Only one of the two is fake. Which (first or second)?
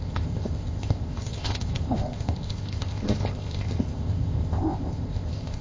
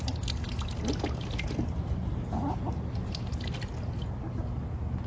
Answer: first